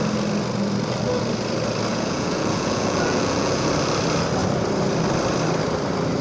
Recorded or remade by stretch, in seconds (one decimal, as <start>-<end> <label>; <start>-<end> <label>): 0.0-1.9 recorded; 1.9-3.7 remade; 3.7-6.2 recorded